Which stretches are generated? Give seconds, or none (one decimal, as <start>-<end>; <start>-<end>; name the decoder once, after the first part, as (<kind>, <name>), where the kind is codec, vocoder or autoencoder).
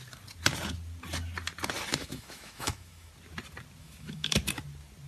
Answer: 1.9-3.1 (autoencoder, DAC-VAE); 3.8-4.4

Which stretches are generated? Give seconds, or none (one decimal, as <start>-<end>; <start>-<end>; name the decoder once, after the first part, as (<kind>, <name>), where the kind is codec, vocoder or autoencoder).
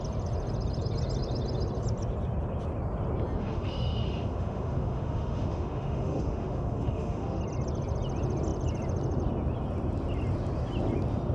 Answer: 3.4-7.4 (autoencoder, DAC-VAE)